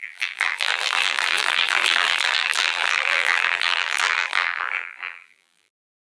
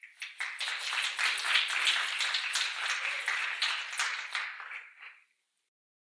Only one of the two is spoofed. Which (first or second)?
first